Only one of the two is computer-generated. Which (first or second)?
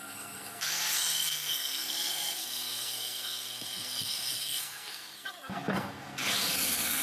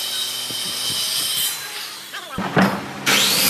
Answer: first